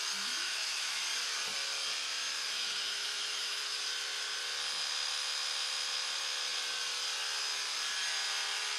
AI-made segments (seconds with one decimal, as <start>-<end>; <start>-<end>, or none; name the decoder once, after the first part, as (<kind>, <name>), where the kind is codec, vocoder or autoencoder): 0.4-1.0 (autoencoder, DAC-VAE); 2.4-3.8